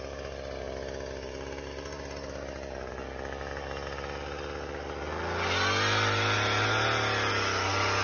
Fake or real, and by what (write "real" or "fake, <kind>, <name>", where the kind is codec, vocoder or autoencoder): real